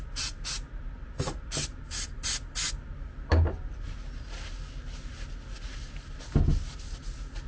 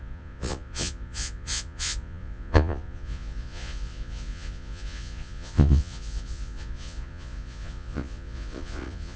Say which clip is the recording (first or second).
first